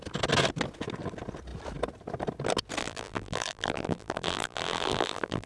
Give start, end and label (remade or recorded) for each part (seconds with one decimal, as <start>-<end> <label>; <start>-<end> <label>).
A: 0.0-2.8 recorded; 2.8-5.5 remade